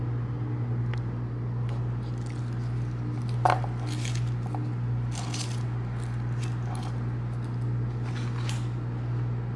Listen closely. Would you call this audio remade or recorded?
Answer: recorded